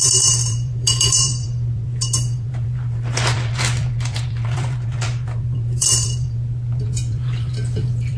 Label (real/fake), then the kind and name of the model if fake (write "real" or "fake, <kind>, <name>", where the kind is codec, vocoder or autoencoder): fake, vocoder, BigVGAN v2